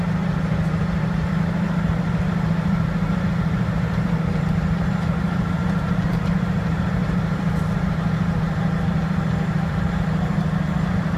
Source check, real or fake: fake